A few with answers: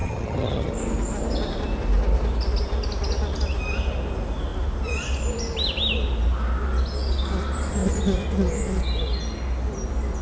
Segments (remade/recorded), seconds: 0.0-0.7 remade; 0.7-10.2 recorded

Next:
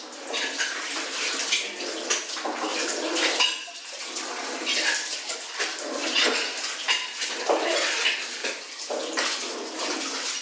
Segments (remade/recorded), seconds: 0.0-10.4 recorded

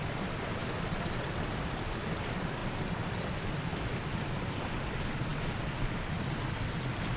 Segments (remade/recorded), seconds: 0.0-7.2 recorded

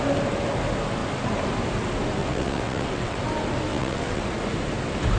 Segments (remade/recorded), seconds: 0.0-2.2 recorded; 2.2-3.2 remade; 3.2-3.7 recorded; 3.7-4.2 remade; 4.2-5.2 recorded

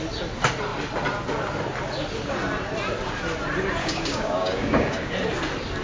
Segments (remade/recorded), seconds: 0.0-3.8 recorded; 3.8-5.1 remade; 5.1-5.8 recorded

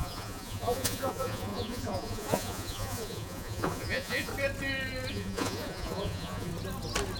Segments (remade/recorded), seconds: 0.0-4.3 remade; 4.3-5.1 recorded; 5.1-6.5 remade; 6.5-7.2 recorded

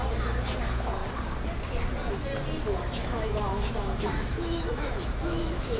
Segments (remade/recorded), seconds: 0.0-0.6 recorded; 0.6-1.0 remade; 1.0-2.6 recorded; 2.6-5.8 remade